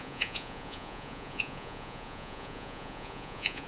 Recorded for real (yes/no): no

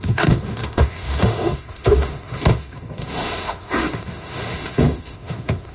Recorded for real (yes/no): no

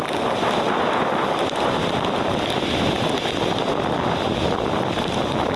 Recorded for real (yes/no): yes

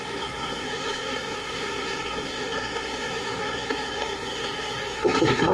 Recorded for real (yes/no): no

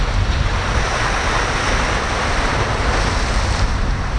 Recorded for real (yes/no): yes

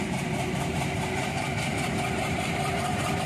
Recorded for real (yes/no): no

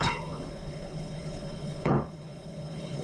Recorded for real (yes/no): no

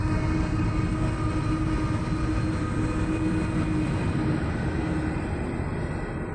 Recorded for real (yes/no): yes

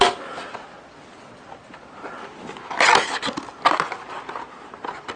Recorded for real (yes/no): yes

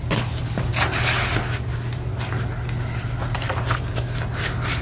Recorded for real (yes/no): yes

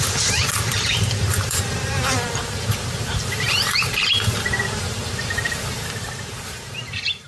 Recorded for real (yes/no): no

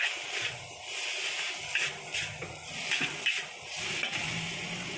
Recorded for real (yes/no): yes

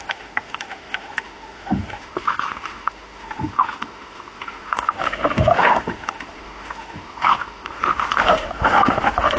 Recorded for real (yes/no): no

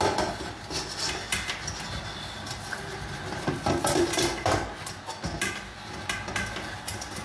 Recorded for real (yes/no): yes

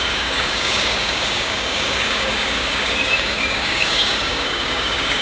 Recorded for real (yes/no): no